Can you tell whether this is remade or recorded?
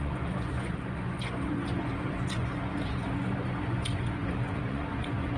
remade